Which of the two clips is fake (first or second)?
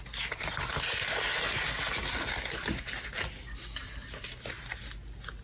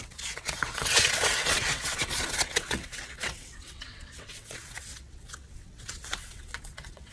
second